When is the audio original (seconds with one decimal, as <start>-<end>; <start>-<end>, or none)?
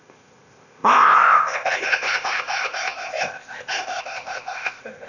none